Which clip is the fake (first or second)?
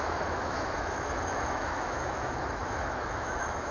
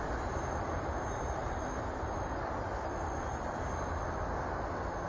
first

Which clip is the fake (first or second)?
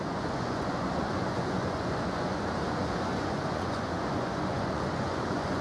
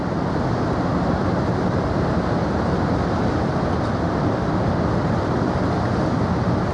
first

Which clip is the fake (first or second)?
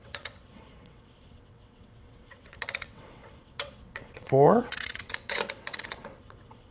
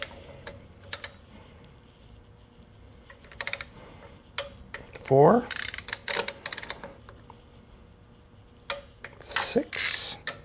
first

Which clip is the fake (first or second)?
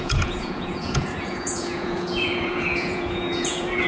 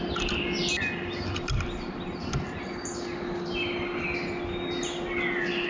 first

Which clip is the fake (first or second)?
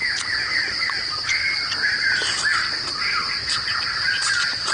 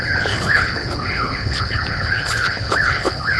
second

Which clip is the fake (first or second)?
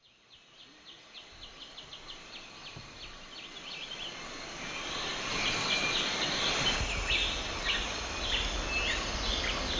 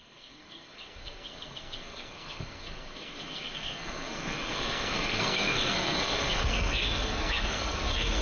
second